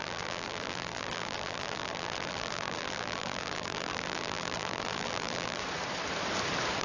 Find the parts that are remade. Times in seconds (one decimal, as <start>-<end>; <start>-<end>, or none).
0.0-5.6